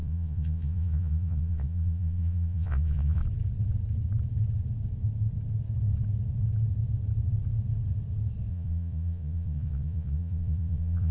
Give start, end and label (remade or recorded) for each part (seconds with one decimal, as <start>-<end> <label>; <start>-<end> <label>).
0.0-3.2 remade; 3.2-8.5 recorded; 8.5-11.1 remade